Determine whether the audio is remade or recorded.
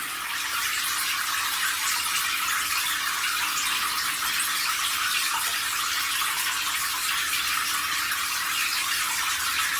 recorded